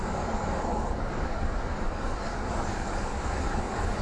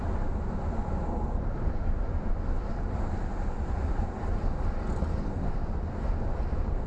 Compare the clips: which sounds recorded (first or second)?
second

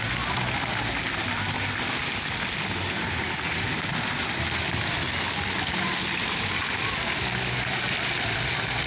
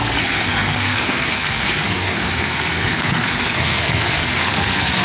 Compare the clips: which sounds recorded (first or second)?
first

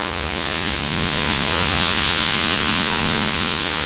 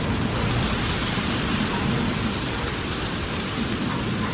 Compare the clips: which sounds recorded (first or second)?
second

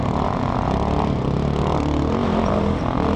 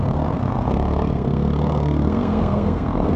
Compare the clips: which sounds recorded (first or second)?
first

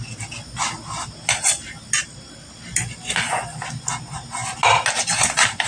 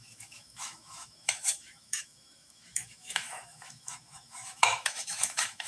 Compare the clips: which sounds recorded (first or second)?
first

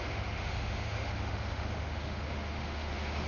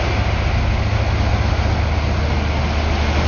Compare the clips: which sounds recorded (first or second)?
second